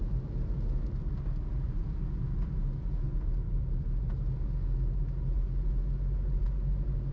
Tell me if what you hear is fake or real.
real